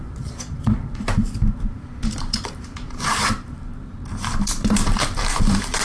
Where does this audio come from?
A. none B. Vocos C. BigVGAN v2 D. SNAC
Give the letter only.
C